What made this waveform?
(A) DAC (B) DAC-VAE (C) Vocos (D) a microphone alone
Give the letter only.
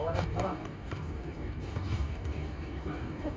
A